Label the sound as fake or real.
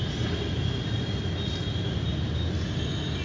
real